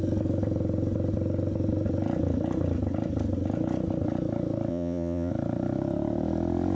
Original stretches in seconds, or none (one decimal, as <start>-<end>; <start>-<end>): 0.0-4.7; 5.3-6.7